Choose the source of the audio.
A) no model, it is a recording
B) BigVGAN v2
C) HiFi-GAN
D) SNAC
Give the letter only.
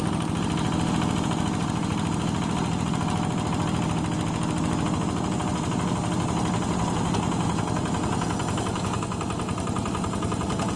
A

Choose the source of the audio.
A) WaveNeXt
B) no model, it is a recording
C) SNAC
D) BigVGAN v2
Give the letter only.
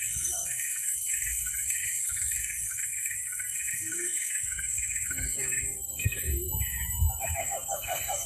C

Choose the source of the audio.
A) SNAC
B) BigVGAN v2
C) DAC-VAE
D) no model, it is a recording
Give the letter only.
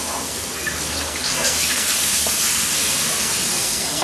A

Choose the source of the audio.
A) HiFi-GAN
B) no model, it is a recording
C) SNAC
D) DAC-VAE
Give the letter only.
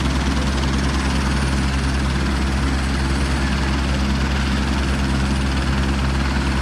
B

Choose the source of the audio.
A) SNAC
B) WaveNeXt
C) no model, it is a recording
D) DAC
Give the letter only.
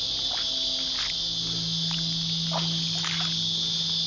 C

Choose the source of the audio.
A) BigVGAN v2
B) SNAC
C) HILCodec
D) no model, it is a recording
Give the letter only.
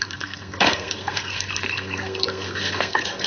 B